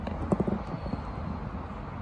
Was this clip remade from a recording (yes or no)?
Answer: no